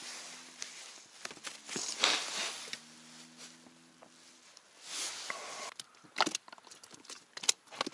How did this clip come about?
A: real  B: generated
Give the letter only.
A